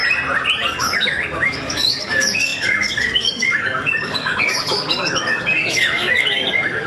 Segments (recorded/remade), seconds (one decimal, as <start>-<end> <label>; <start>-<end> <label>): 0.0-0.7 recorded; 0.7-6.9 remade